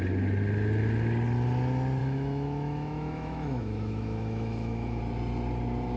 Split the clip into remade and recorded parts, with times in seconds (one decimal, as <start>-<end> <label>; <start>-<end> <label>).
0.0-2.0 recorded; 2.0-5.0 remade; 5.0-6.0 recorded